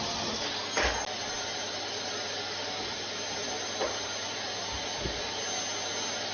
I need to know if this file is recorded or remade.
recorded